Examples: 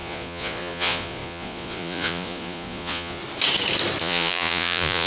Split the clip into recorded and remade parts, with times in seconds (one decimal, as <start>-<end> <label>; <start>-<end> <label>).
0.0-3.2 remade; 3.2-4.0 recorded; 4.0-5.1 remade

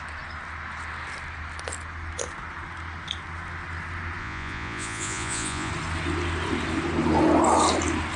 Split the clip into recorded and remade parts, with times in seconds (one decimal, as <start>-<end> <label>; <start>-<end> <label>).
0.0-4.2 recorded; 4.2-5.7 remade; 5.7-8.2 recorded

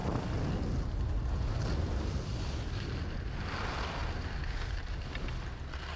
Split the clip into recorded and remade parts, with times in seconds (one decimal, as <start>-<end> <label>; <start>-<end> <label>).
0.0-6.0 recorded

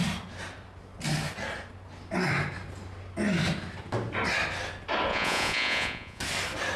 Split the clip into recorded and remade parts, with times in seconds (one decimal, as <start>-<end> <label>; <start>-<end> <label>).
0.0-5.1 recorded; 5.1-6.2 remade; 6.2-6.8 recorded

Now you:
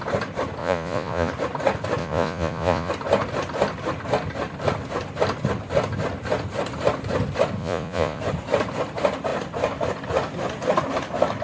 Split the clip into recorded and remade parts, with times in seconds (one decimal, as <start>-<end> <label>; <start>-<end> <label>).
0.0-0.6 recorded; 0.6-1.3 remade; 1.3-2.0 recorded; 2.0-2.9 remade; 2.9-7.6 recorded; 7.6-8.2 remade; 8.2-11.4 recorded